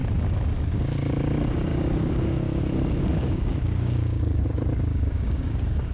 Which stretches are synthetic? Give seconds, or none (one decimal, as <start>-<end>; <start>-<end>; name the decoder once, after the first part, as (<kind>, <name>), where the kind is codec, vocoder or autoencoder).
1.7-2.6 (codec, DAC); 3.1-4.4; 4.9-5.9